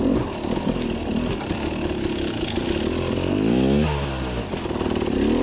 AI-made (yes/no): no